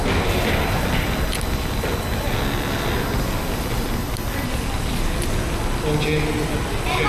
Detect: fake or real real